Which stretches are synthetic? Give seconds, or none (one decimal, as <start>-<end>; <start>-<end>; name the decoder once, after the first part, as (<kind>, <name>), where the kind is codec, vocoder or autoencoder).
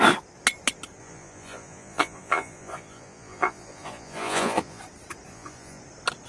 1.0-4.8 (vocoder, Vocos); 5.3-5.8